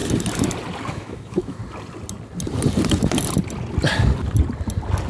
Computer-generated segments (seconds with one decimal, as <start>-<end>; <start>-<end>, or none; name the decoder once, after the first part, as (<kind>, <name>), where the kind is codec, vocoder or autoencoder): 0.9-1.6 (autoencoder, DAC-VAE)